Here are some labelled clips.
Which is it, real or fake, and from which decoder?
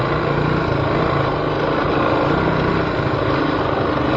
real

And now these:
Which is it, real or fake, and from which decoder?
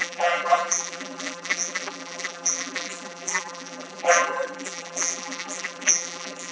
fake, vocoder, BigVGAN v2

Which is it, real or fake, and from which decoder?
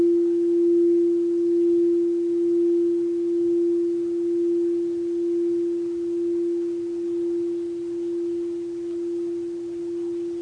real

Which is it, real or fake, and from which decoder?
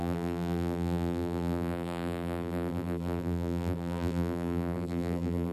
fake, vocoder, BigVGAN v2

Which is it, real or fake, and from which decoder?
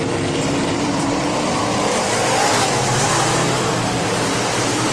fake, vocoder, BigVGAN v2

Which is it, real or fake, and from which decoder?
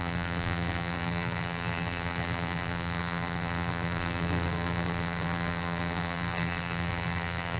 fake, vocoder, BigVGAN v2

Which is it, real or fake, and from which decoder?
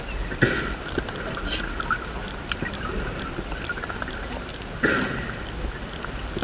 real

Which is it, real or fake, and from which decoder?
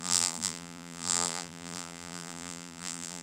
fake, vocoder, BigVGAN v2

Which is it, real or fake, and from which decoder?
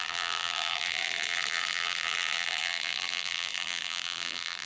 fake, vocoder, BigVGAN v2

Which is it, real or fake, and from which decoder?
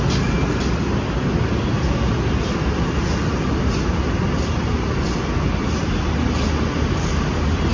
real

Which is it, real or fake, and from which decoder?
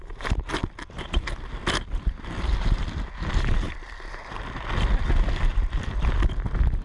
real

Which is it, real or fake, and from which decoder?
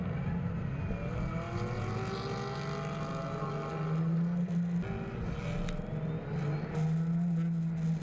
real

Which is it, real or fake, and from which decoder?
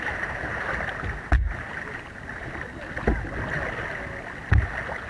real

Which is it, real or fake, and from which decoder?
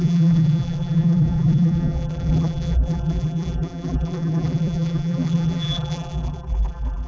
fake, vocoder, BigVGAN v2